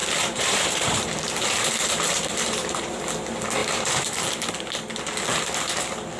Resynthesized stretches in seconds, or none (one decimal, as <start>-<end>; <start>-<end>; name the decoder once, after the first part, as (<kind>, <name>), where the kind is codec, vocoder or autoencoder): 0.0-3.0 (vocoder, BigVGAN v2); 3.6-4.3